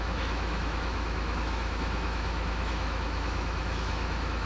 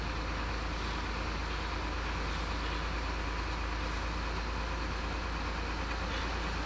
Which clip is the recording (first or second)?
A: second